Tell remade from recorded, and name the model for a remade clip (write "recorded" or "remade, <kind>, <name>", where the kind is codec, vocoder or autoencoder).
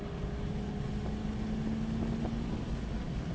recorded